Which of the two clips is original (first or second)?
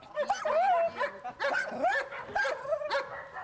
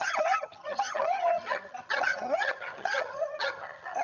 first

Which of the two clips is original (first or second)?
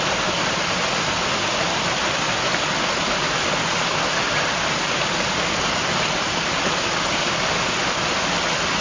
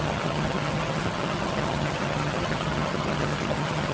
first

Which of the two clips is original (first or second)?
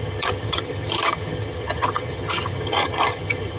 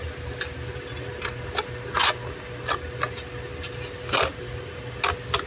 second